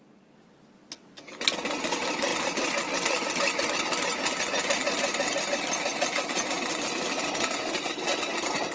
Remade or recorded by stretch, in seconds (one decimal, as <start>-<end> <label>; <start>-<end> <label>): 0.0-8.7 recorded